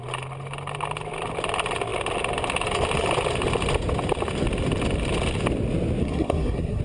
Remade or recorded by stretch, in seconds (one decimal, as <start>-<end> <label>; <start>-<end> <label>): 0.0-6.0 recorded; 6.0-6.8 remade